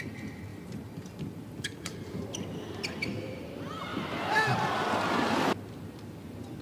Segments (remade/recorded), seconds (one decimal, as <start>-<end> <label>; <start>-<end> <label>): 0.0-0.5 recorded; 0.5-3.3 remade; 3.3-3.9 recorded; 3.9-6.0 remade; 6.0-6.6 recorded